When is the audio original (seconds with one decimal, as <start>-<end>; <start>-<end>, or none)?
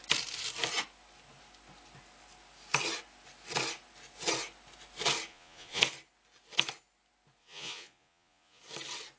0.0-5.3; 5.8-7.4; 8.6-9.2